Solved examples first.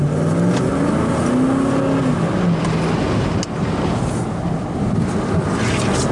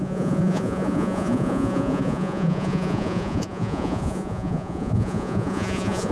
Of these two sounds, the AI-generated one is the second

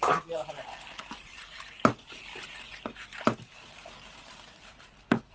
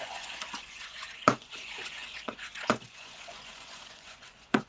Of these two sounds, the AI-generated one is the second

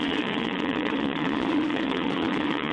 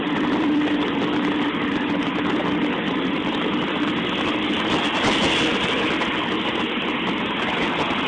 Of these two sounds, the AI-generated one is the first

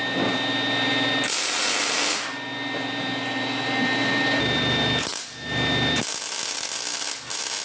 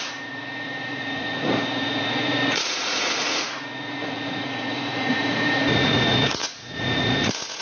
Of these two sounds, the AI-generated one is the second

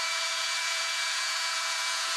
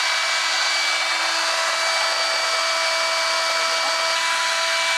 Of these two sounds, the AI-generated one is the first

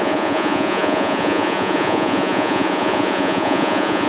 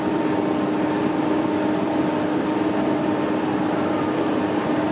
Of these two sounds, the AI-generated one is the first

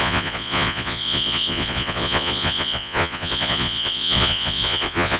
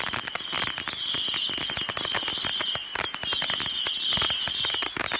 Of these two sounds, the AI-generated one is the first